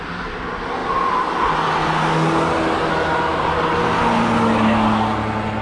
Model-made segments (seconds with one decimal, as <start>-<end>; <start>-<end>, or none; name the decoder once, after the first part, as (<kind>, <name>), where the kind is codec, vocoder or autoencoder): none